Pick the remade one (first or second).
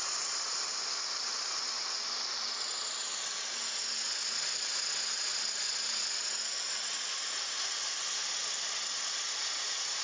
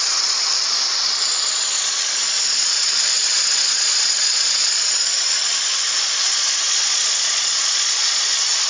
second